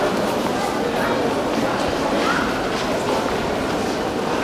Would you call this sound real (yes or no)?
yes